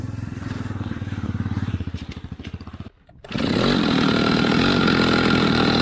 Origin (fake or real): fake